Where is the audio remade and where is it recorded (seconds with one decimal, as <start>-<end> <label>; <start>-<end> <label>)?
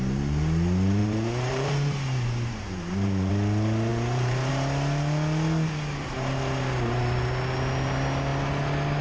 0.0-1.0 recorded; 1.0-3.3 remade; 3.3-3.9 recorded; 3.9-4.5 remade; 4.5-9.0 recorded